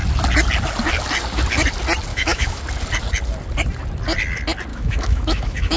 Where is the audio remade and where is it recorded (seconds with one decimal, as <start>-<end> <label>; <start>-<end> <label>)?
0.0-2.1 recorded; 2.1-2.6 remade; 2.6-4.7 recorded; 4.7-5.8 remade